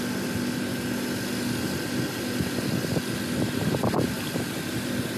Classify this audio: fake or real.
real